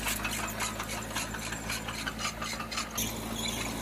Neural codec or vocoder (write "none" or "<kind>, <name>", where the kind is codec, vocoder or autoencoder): none